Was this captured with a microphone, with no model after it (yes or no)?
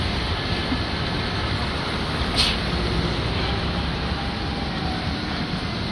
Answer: yes